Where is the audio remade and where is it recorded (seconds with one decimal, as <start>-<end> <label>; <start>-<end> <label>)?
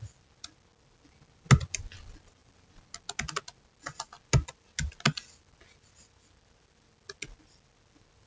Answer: 0.0-8.3 recorded